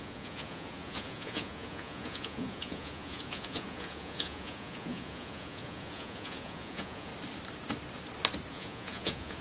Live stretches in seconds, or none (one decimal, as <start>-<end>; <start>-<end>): 7.1-8.5

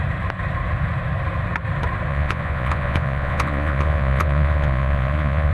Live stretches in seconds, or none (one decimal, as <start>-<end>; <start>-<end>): 0.0-2.1

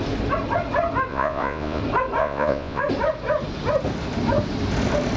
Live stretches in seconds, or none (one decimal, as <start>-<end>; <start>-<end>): 0.0-1.1; 1.8-2.2; 2.8-5.2

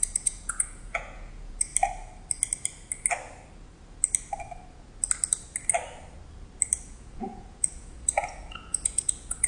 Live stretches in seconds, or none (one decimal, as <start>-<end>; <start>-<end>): 1.7-6.9

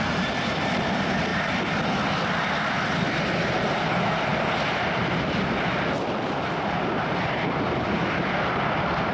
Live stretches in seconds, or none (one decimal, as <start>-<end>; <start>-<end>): 0.0-9.1

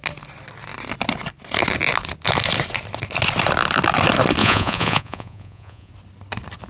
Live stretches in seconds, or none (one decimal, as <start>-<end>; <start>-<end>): 0.0-4.4; 5.9-6.7